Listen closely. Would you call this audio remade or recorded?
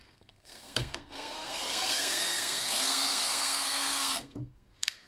remade